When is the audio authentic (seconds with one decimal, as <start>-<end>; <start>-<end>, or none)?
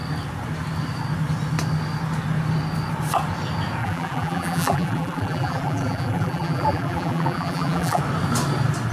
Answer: 0.0-3.8; 8.0-8.9